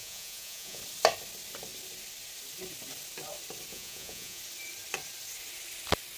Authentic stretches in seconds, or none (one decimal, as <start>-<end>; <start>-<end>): 0.8-3.7; 4.4-6.2